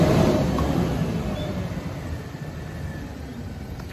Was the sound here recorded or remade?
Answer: recorded